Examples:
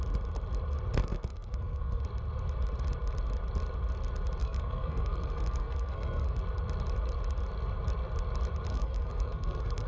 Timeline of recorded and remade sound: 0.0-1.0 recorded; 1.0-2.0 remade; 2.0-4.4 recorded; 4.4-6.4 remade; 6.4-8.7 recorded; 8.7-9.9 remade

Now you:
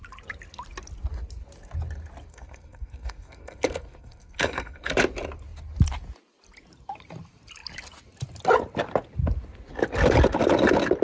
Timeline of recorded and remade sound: 0.0-2.3 recorded; 2.3-4.9 remade; 4.9-11.0 recorded